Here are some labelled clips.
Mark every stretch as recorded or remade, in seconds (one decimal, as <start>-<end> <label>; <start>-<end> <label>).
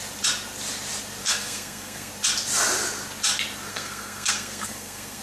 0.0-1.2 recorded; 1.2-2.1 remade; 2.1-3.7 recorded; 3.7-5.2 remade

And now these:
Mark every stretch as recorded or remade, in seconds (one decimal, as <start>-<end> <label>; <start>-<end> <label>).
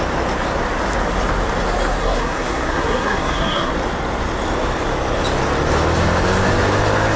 0.0-2.0 recorded; 2.0-3.7 remade; 3.7-7.2 recorded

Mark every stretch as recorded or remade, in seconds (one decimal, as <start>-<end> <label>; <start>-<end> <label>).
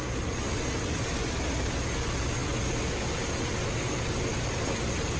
0.0-5.2 recorded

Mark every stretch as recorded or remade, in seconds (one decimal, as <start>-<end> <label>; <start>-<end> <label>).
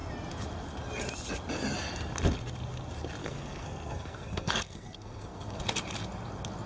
0.0-3.2 recorded; 3.2-5.6 remade; 5.6-6.7 recorded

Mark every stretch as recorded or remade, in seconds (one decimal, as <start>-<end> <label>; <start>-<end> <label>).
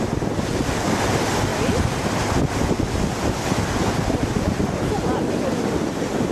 0.0-6.3 recorded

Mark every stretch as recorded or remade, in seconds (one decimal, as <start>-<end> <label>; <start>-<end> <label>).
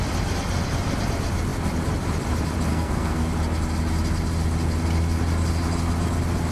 0.0-2.7 recorded; 2.7-3.3 remade; 3.3-6.5 recorded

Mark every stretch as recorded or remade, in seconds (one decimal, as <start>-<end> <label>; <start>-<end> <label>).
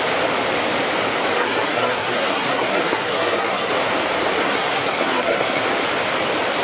0.0-1.4 recorded; 1.4-3.7 remade; 3.7-4.4 recorded; 4.4-5.6 remade; 5.6-6.6 recorded